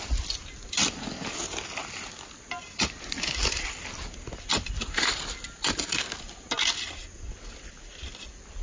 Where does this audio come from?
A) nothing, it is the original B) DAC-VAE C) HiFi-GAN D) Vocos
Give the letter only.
A